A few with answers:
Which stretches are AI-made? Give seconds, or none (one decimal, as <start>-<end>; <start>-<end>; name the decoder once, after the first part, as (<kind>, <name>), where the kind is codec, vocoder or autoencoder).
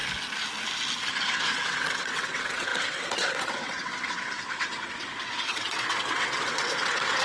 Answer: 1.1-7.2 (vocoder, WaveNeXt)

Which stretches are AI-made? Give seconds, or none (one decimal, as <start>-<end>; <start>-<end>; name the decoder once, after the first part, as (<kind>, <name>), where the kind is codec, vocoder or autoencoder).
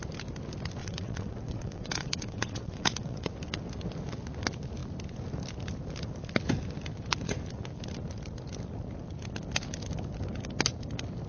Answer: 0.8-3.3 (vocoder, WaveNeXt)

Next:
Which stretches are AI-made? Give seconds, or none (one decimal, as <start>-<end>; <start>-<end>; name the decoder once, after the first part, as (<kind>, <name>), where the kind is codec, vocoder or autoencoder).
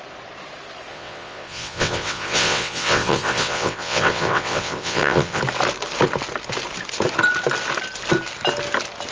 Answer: 0.9-5.4 (vocoder, WaveNeXt)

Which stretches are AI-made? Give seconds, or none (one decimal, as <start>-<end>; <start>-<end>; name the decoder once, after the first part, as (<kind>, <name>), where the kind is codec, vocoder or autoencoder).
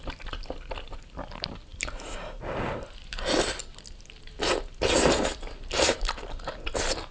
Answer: none